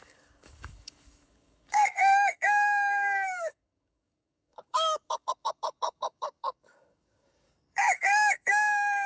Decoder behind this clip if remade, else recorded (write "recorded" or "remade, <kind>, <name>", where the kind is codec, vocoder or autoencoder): remade, codec, DAC